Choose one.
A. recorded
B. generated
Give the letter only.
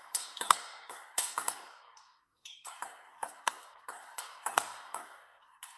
B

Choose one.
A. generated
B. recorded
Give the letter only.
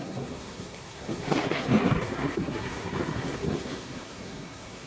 A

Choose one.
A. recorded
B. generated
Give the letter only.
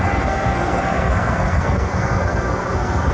B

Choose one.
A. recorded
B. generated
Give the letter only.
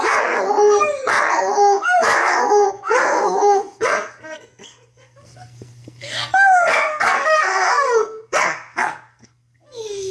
B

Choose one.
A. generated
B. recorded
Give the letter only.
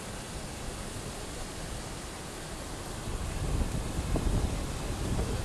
B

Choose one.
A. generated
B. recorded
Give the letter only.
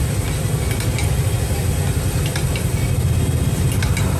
B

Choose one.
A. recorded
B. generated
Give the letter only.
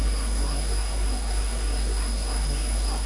B